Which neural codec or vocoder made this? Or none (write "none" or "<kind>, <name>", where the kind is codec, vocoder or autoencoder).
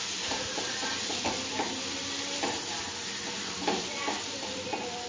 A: vocoder, BigVGAN v2